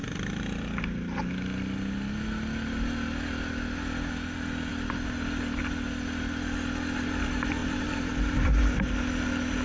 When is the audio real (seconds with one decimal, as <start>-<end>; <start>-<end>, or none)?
0.0-7.6; 8.1-9.6